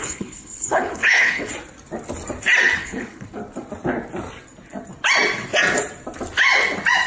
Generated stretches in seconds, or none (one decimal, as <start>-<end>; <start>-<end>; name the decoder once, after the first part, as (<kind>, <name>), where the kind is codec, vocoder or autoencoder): 0.0-1.5 (codec, HILCodec); 2.8-3.4